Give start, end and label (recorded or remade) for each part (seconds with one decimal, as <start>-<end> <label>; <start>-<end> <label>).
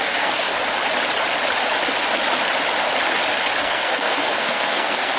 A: 0.0-0.5 remade; 0.5-3.6 recorded; 3.6-5.2 remade